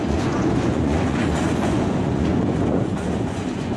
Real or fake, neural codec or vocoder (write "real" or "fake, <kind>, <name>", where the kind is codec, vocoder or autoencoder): fake, vocoder, Vocos